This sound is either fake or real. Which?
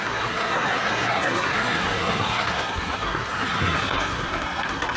fake